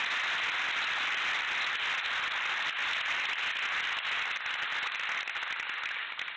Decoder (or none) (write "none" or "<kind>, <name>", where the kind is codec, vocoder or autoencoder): none